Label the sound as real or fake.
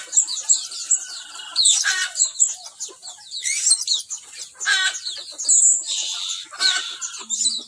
real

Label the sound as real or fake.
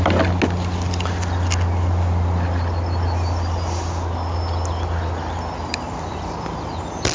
real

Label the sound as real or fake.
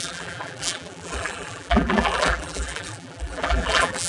fake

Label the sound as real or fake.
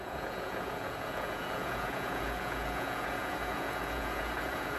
fake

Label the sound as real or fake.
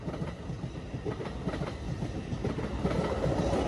real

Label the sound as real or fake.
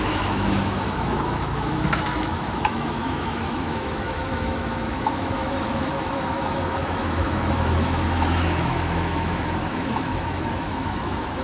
fake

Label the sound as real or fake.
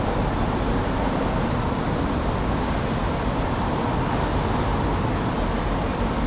real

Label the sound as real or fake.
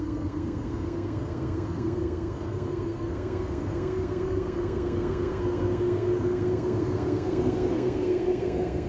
fake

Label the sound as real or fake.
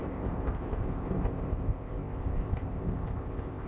fake